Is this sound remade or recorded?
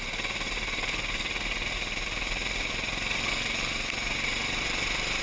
recorded